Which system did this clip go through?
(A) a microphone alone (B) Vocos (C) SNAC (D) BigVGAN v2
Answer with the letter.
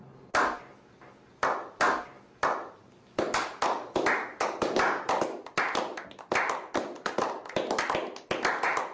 A